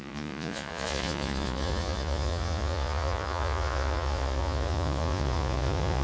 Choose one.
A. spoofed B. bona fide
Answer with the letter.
A